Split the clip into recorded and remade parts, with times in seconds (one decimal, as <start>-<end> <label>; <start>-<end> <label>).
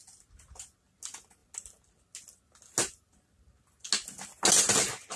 0.0-5.2 recorded